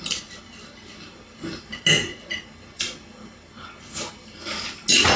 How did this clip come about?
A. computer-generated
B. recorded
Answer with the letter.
B